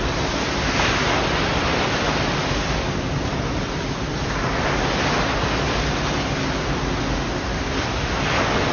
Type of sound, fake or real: real